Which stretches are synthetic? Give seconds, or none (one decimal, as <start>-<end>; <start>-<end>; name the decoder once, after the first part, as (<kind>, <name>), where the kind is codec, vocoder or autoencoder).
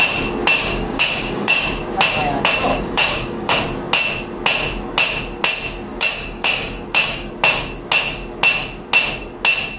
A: 0.6-1.8 (codec, DAC); 2.7-3.6; 5.9-7.3